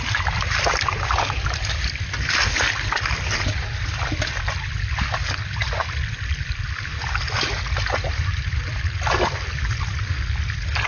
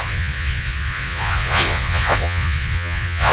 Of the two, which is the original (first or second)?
first